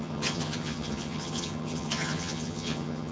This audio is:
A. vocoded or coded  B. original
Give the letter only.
A